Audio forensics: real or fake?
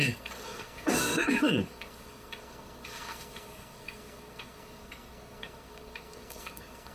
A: fake